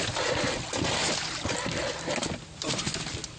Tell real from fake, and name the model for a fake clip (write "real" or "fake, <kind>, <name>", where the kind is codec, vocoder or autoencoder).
real